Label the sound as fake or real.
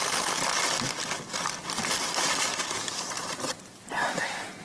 real